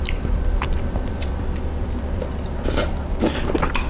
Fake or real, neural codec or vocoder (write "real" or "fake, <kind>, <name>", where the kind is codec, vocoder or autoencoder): fake, vocoder, BigVGAN v2